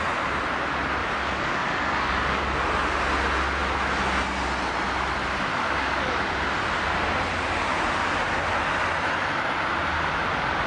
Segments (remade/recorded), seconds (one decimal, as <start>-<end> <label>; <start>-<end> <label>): 0.0-1.0 recorded; 1.0-2.4 remade; 2.4-5.5 recorded; 5.5-6.1 remade; 6.1-10.7 recorded